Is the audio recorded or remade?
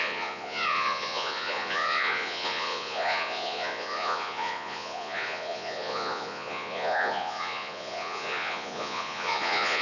remade